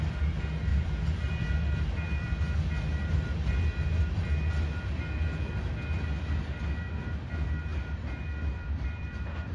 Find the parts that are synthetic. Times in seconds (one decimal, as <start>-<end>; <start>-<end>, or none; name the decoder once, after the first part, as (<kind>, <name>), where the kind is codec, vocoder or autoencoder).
0.7-2.4 (vocoder, BigVGAN v2); 7.7-9.5